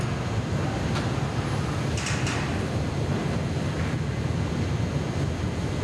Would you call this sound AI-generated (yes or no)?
no